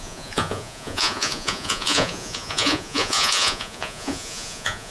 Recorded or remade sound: remade